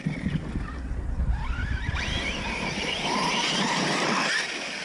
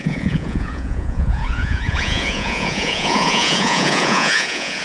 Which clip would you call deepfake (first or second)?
second